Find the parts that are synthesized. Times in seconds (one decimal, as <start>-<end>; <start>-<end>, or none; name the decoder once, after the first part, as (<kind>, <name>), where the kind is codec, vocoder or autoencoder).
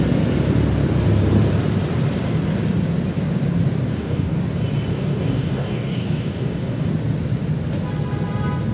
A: 3.9-4.4 (codec, DAC); 4.9-6.9